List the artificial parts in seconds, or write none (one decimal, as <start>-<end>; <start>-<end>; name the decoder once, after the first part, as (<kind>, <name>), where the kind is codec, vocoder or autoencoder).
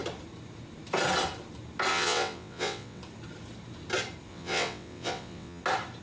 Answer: 1.9-3.0 (vocoder, WaveNeXt); 4.3-5.6